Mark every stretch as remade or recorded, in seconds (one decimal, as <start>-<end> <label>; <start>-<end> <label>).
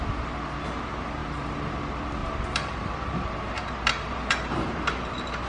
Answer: 0.0-1.2 recorded; 1.2-1.8 remade; 1.8-2.2 recorded; 2.2-5.1 remade; 5.1-5.5 recorded